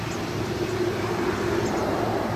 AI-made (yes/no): no